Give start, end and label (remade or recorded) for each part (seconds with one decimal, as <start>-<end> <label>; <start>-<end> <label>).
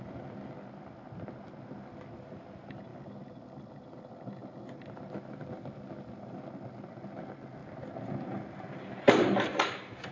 0.0-10.1 recorded